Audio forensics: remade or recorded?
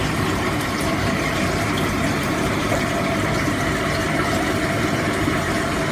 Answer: remade